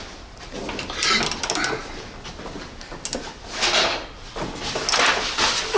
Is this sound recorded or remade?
recorded